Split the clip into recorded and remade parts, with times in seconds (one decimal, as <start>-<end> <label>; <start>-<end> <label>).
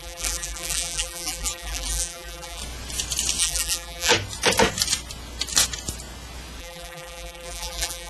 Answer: 0.0-2.6 remade; 2.6-3.4 recorded; 3.4-4.1 remade; 4.1-6.6 recorded; 6.6-8.1 remade